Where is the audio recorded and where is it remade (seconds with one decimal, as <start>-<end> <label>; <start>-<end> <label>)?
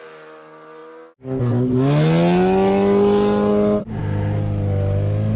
0.0-5.4 recorded